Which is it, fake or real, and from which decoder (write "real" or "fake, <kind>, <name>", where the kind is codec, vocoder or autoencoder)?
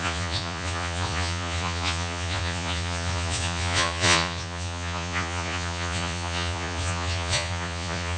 fake, vocoder, Vocos